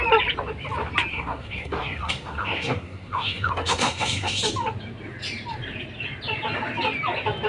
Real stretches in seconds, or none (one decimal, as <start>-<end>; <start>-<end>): 0.0-1.1; 4.4-7.5